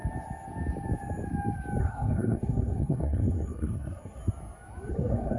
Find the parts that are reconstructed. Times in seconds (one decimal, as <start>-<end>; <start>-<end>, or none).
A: 1.8-4.2; 4.9-5.4